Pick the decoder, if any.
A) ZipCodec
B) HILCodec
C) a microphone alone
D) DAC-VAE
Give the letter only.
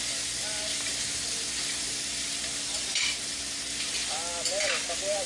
C